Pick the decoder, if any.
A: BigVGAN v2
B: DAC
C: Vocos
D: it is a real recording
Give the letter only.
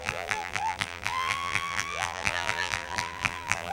A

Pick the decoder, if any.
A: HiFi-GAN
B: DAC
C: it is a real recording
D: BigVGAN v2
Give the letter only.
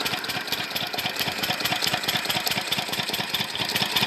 C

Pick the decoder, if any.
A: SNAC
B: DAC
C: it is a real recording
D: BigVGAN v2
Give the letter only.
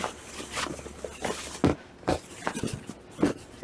D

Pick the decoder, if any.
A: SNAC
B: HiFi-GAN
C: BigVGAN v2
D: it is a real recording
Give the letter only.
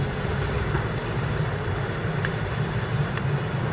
C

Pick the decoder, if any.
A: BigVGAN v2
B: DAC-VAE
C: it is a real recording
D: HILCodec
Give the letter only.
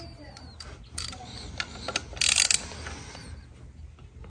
C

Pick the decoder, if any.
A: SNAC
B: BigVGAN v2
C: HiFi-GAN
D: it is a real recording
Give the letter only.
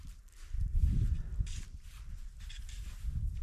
B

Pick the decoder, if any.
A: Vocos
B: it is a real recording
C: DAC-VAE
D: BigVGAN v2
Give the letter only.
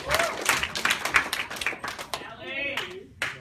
D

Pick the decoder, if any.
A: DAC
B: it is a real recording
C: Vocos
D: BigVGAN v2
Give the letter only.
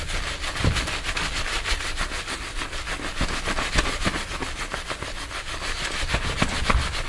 B